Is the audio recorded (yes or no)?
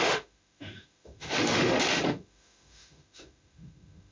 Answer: no